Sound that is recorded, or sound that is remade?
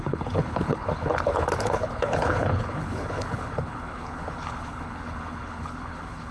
remade